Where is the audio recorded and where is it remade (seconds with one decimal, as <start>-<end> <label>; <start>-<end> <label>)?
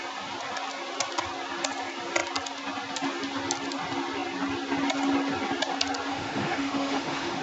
0.0-6.1 recorded; 6.1-7.4 remade